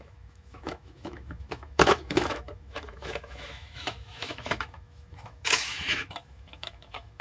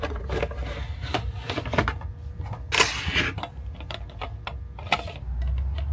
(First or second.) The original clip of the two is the second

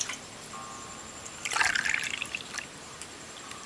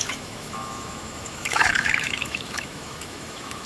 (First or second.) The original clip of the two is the first